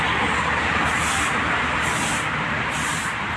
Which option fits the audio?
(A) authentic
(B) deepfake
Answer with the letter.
A